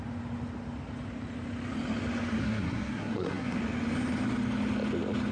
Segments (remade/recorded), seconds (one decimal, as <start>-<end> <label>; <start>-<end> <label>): 0.0-2.4 recorded; 2.4-3.6 remade; 3.6-5.3 recorded